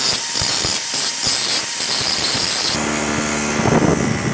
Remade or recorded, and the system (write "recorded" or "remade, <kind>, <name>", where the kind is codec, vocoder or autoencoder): recorded